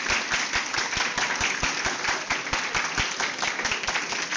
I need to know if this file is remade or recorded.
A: recorded